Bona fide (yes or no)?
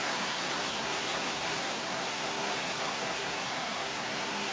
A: no